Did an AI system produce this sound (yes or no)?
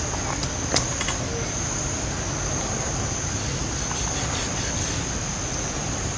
no